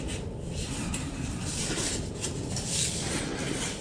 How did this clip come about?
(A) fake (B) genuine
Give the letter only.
B